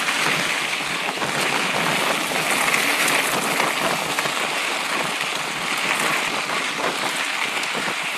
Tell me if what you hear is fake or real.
real